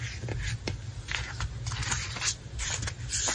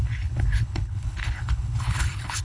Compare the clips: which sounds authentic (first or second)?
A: first